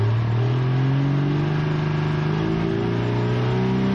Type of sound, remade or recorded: recorded